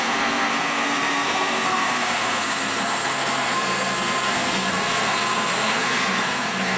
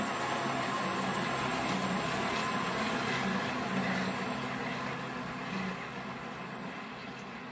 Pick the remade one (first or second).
first